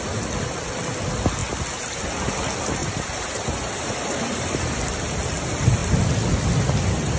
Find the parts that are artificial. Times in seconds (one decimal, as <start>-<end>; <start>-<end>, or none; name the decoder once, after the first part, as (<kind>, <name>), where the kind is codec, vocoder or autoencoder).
2.8-4.6 (vocoder, BigVGAN v2)